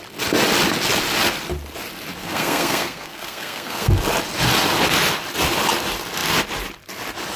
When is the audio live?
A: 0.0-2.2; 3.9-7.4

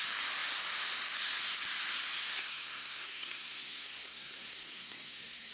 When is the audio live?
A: 0.0-2.2